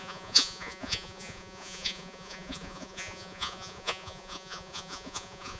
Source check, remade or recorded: remade